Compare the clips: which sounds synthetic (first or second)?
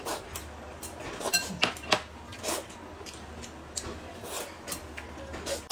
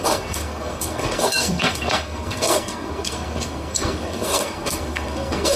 second